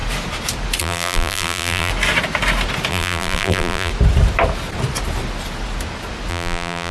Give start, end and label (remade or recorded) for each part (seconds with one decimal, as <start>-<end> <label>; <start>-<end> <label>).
0.0-0.8 recorded; 0.8-1.9 remade; 1.9-2.9 recorded; 2.9-3.9 remade; 3.9-6.3 recorded; 6.3-6.9 remade

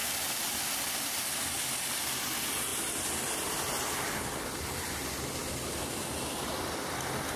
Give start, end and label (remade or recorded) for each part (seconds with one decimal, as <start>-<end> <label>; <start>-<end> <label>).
0.0-7.4 recorded

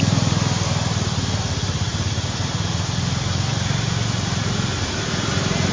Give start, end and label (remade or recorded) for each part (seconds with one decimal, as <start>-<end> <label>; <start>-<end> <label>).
0.0-5.7 recorded

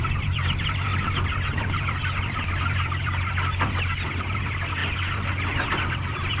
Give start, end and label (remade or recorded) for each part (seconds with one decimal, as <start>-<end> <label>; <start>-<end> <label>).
0.0-0.9 remade; 0.9-1.6 recorded; 1.6-6.4 remade

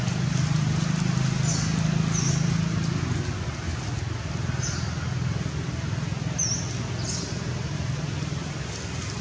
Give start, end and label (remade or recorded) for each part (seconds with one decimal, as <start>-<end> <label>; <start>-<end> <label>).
0.0-9.2 recorded